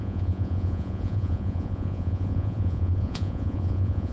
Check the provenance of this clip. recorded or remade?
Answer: remade